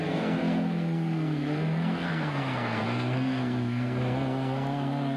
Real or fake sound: fake